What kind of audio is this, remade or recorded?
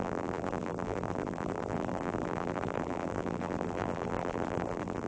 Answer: remade